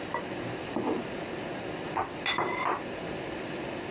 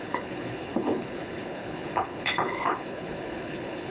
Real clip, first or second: first